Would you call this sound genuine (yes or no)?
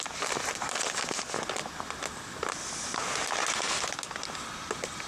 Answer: yes